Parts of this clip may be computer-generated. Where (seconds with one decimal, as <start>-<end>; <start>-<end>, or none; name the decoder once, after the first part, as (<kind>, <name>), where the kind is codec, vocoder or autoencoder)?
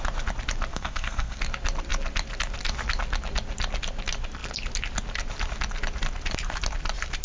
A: 0.7-1.4 (codec, SNAC)